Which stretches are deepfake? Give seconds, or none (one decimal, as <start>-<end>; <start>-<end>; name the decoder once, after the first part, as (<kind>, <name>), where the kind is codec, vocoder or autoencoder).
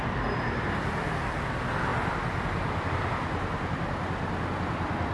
none